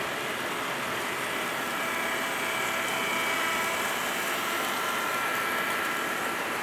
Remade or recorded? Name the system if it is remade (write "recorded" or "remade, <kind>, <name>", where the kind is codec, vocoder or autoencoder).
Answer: recorded